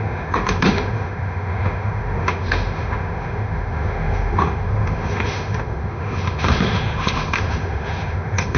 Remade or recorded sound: remade